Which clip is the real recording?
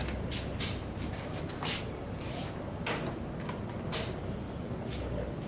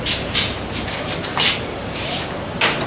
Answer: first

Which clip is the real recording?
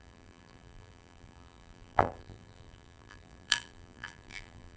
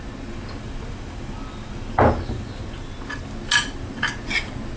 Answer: second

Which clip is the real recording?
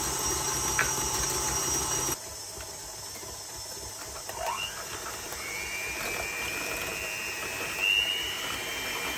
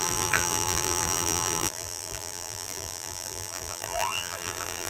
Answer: first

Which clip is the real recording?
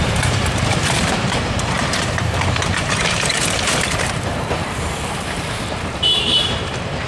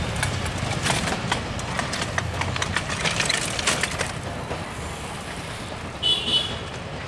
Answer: second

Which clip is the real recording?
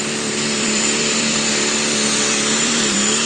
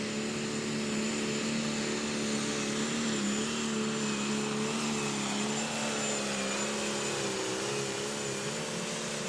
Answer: second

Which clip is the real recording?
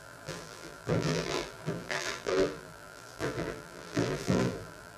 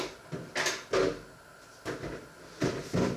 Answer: second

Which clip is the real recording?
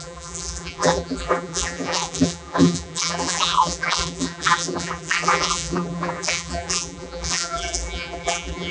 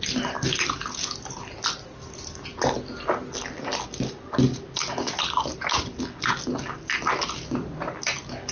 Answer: second